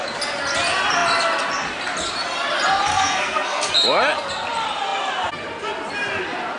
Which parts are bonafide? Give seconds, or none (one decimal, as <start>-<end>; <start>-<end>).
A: 0.0-2.9; 3.7-6.6